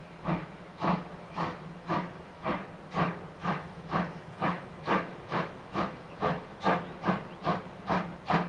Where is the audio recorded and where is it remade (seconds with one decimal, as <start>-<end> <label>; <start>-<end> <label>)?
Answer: 0.0-2.5 remade; 2.5-3.4 recorded; 3.4-7.0 remade; 7.0-8.5 recorded